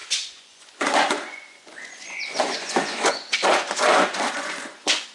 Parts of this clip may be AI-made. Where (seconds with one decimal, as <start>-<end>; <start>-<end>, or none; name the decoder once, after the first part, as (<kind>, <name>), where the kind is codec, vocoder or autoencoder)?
0.0-5.1 (vocoder, Vocos)